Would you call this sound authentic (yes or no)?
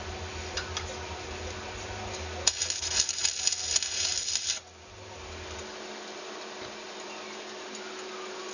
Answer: yes